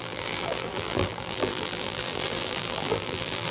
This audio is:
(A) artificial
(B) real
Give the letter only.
A